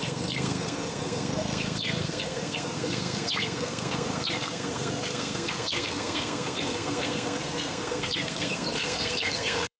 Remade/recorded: remade